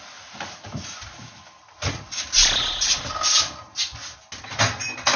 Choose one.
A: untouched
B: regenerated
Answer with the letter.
A